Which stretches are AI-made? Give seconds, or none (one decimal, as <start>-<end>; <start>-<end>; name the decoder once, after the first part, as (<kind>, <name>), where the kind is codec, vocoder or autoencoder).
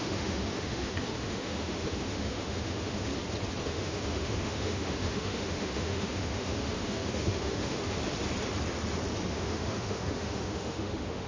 0.0-3.1 (autoencoder, DAC-VAE); 3.6-8.0; 9.3-11.3